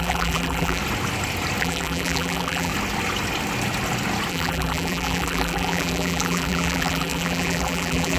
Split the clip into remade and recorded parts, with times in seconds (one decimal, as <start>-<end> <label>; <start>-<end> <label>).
0.0-0.8 remade; 0.8-1.6 recorded; 1.6-2.7 remade; 2.7-4.3 recorded; 4.3-8.2 remade